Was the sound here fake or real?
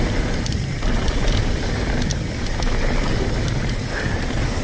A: real